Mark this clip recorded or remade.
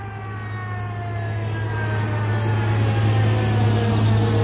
recorded